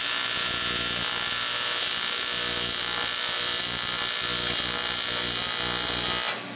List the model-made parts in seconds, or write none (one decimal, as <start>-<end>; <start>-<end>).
none